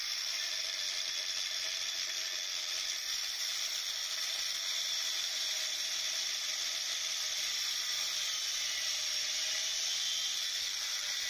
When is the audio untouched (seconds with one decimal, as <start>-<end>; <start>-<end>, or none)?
9.7-10.9